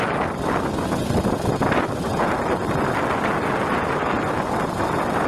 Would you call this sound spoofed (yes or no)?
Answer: no